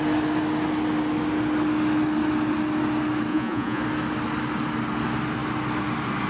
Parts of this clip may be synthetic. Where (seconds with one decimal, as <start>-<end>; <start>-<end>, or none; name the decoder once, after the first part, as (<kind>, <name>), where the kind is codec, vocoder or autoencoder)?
3.3-3.8 (vocoder, Vocos)